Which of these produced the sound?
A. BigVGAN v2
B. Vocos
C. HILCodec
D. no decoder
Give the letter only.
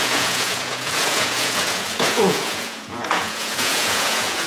B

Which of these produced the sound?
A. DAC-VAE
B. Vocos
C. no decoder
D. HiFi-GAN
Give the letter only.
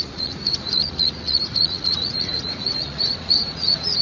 B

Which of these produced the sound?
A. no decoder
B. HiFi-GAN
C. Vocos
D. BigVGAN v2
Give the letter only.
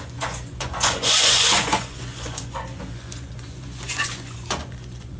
C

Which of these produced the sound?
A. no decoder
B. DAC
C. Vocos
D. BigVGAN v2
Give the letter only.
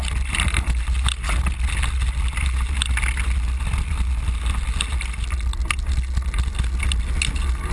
A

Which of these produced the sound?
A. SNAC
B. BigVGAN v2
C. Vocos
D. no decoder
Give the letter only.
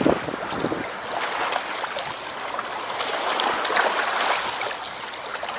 D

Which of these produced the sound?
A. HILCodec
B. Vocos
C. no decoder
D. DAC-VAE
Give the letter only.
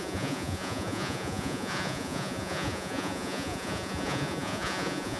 B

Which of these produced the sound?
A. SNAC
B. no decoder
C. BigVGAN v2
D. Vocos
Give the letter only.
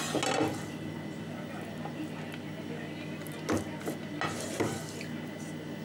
B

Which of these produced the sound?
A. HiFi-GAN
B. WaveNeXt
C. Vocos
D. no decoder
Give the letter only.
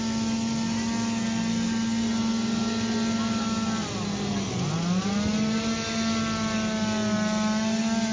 D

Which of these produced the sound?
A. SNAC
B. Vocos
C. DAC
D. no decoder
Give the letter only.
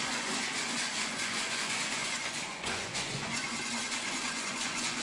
B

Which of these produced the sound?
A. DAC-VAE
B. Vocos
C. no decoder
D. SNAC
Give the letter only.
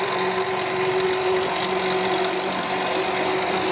C